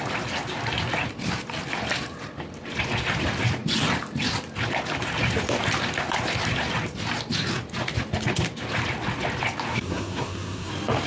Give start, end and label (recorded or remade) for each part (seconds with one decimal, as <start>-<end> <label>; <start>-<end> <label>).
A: 0.0-9.7 recorded; 9.7-10.7 remade; 10.7-11.1 recorded

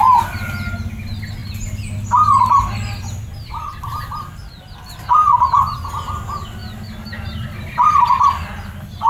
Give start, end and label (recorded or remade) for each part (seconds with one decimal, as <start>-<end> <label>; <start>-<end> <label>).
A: 0.0-9.1 recorded

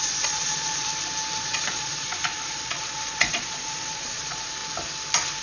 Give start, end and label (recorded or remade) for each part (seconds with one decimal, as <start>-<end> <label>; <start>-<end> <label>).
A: 0.0-0.9 remade; 0.9-1.4 recorded; 1.4-4.6 remade; 4.6-5.4 recorded

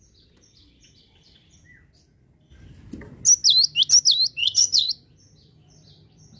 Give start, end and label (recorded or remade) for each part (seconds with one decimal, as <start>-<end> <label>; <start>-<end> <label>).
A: 0.0-4.4 recorded; 4.4-4.9 remade; 4.9-6.4 recorded

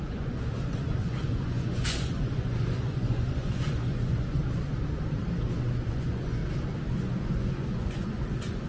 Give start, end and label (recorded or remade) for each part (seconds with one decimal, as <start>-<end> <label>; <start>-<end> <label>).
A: 0.0-4.4 remade; 4.4-5.9 recorded; 5.9-6.4 remade; 6.4-6.9 recorded; 6.9-8.7 remade